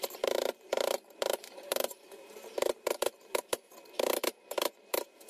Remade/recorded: remade